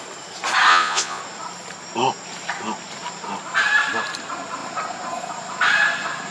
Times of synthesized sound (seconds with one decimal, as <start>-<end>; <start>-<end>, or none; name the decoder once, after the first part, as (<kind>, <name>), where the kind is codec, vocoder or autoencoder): 0.7-1.2 (vocoder, Vocos)